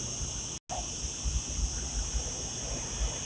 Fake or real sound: real